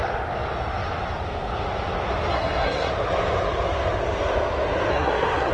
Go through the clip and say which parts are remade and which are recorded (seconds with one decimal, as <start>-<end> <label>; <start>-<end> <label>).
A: 0.0-2.3 recorded; 2.3-2.9 remade; 2.9-4.9 recorded; 4.9-5.5 remade